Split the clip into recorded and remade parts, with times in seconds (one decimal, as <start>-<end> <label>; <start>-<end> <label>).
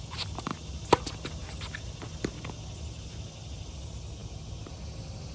0.0-5.3 recorded